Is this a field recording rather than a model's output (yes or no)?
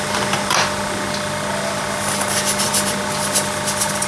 yes